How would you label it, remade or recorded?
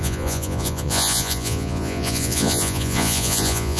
remade